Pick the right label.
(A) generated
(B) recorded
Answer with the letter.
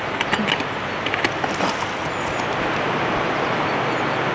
B